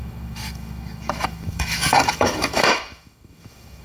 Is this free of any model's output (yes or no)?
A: no